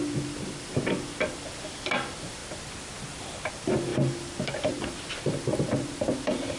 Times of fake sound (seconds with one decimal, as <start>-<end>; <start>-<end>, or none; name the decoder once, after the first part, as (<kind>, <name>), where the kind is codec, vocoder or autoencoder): 0.0-2.4 (vocoder, BigVGAN v2); 3.5-6.6